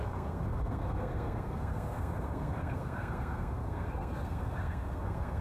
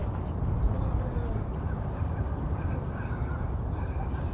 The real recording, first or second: second